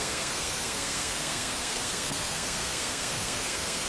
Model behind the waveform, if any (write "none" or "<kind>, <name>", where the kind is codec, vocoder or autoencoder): codec, SNAC